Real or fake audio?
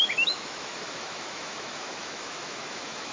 fake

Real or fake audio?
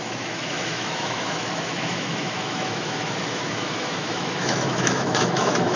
fake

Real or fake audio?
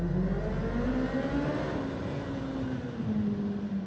real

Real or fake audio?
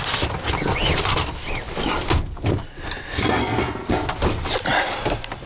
real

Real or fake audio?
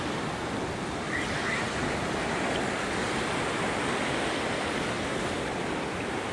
real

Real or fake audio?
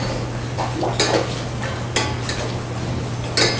real